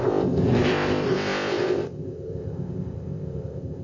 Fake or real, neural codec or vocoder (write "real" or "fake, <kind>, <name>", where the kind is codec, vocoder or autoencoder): fake, codec, ZipCodec